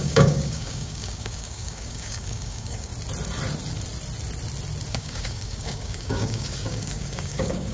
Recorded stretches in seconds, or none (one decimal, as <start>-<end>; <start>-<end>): 2.9-4.9